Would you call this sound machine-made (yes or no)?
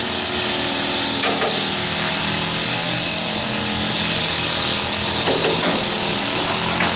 no